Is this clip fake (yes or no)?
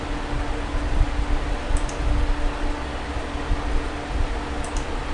no